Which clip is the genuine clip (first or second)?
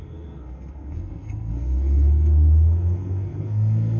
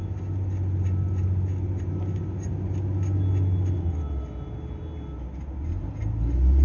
second